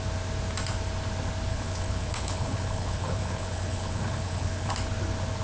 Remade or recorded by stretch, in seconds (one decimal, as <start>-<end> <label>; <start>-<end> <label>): 0.0-1.5 recorded; 1.5-4.7 remade; 4.7-5.4 recorded